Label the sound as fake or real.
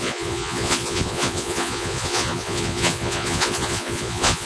fake